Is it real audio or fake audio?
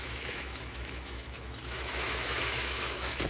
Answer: fake